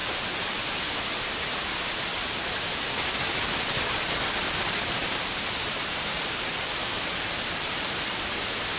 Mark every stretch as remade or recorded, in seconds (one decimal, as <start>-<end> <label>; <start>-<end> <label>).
0.0-4.4 recorded; 4.4-8.1 remade; 8.1-8.8 recorded